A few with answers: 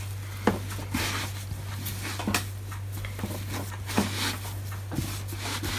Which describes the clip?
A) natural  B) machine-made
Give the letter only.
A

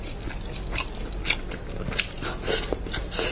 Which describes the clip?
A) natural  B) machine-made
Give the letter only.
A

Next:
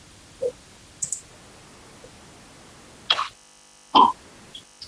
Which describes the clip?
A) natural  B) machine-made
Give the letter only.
A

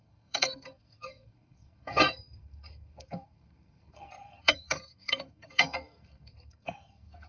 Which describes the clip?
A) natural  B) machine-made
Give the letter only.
B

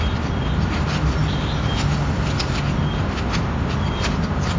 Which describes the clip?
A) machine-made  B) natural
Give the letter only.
B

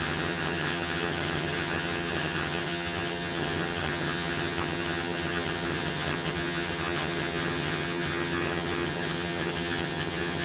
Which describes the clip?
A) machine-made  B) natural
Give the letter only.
A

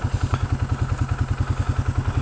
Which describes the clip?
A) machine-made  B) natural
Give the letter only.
B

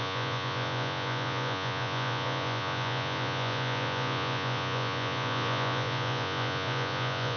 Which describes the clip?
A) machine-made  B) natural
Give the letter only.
A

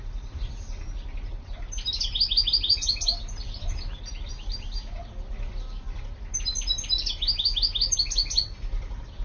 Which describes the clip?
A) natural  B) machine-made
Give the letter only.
A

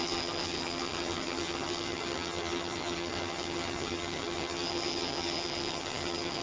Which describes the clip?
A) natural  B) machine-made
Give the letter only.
B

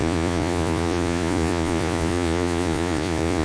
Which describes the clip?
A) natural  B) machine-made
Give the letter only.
B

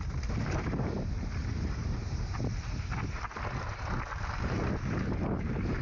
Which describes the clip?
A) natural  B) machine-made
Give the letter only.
B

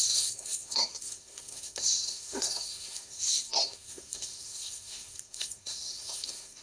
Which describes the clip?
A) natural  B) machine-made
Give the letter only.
B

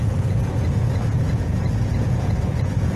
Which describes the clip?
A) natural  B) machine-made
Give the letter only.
B